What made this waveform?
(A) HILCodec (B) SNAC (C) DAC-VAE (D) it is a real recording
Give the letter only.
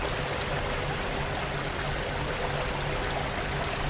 D